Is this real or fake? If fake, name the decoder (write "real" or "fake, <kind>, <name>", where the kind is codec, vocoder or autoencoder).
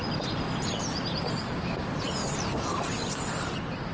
real